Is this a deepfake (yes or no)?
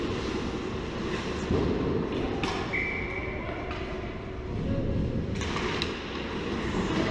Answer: no